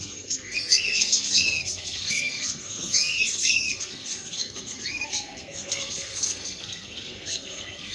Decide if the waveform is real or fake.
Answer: fake